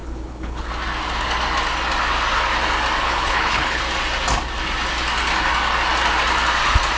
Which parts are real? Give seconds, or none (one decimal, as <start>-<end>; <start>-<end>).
0.7-3.0; 3.8-7.0